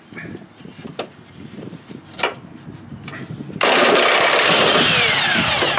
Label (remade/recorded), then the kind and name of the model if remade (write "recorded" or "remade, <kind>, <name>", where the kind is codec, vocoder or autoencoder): remade, vocoder, BigVGAN v2